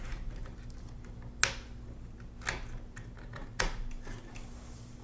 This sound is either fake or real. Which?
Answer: real